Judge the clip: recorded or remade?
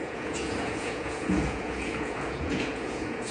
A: remade